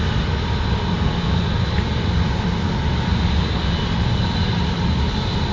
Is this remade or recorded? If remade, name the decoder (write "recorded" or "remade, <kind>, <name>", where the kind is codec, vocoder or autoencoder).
recorded